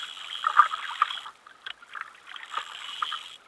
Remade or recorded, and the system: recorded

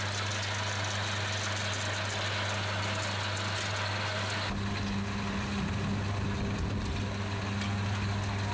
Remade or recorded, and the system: recorded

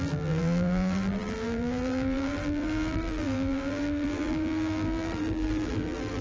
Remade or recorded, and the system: remade, vocoder, BigVGAN v2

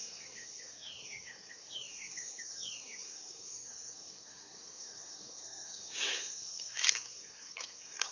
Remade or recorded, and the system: remade, codec, SNAC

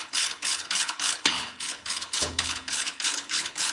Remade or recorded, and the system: remade, codec, HILCodec